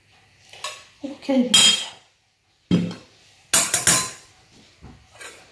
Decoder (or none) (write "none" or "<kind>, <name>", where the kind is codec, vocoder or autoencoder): none